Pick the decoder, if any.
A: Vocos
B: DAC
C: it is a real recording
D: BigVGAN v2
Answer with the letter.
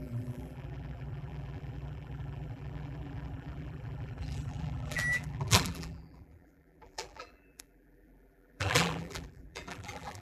D